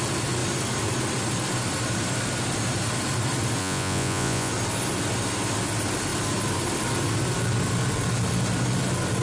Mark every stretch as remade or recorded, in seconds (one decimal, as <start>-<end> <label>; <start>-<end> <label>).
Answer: 0.0-3.6 recorded; 3.6-4.5 remade; 4.5-9.2 recorded